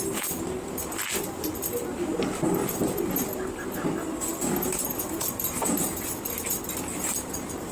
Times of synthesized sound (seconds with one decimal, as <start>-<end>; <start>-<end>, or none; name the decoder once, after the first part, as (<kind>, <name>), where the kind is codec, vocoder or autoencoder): none